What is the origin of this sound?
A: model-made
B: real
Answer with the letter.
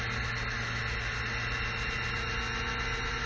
B